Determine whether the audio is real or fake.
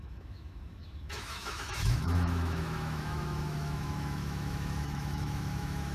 fake